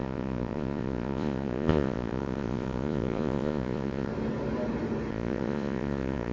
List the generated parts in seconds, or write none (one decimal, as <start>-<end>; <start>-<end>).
0.0-4.1; 5.1-6.3